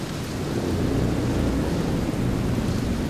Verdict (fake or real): real